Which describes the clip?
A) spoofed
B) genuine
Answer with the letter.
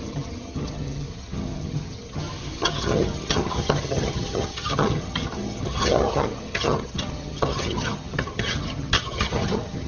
A